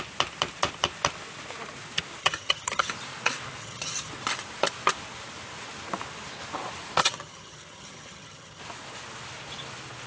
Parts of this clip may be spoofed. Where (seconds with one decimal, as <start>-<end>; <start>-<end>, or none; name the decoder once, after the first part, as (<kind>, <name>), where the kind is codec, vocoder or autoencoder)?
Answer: 2.2-2.9 (vocoder, HiFi-GAN); 3.6-4.1; 7.0-8.6